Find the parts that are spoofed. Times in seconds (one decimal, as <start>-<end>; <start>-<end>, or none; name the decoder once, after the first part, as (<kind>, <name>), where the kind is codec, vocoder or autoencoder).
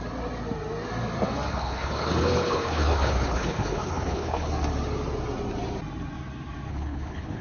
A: 1.5-4.5 (codec, HILCodec); 6.7-7.4